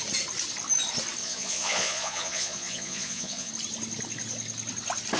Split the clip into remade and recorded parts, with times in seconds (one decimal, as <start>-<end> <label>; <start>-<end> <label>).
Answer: 0.0-1.2 recorded; 1.2-3.5 remade; 3.5-5.2 recorded